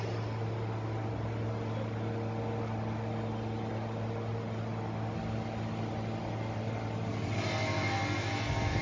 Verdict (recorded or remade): recorded